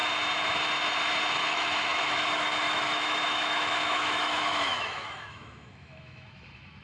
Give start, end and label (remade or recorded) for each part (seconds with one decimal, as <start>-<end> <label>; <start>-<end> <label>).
0.0-1.3 recorded; 1.3-6.8 remade